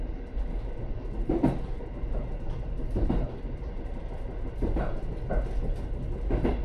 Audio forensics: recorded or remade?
recorded